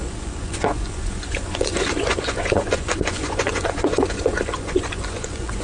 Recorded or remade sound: remade